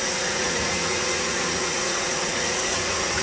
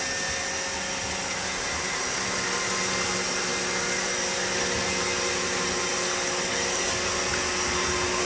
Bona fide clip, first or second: second